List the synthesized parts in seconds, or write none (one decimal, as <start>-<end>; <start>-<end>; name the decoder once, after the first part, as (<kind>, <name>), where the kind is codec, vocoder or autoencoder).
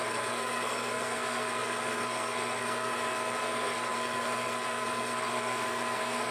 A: 0.0-6.3 (codec, SNAC)